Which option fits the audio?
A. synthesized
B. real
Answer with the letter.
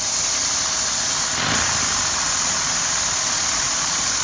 A